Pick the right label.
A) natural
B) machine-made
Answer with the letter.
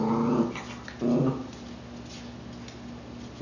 A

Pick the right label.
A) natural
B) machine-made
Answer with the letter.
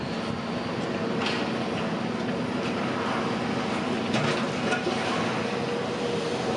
A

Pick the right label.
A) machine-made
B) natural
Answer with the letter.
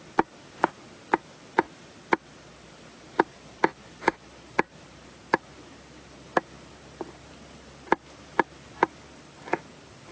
B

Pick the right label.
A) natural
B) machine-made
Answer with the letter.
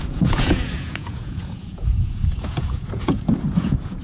B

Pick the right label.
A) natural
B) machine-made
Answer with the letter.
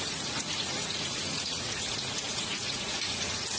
B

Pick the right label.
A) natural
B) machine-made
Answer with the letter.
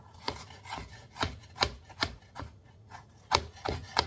B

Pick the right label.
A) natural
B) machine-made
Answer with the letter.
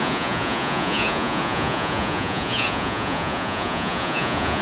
B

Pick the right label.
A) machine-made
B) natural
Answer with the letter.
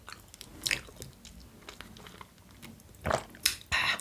B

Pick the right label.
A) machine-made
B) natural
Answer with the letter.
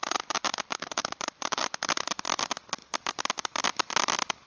B